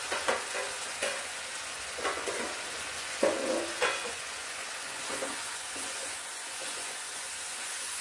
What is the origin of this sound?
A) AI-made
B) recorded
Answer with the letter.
A